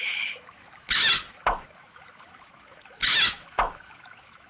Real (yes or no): no